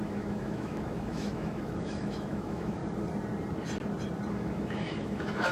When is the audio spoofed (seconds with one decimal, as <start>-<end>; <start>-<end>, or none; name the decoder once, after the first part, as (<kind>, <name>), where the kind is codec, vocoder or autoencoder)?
0.0-2.8 (autoencoder, DAC-VAE); 4.3-5.5